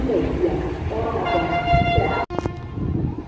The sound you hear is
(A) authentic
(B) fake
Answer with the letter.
A